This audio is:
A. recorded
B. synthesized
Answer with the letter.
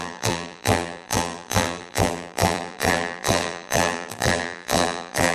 B